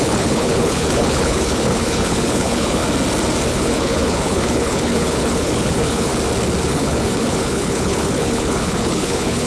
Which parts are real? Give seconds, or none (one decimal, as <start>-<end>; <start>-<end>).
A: 2.8-3.5; 6.1-6.6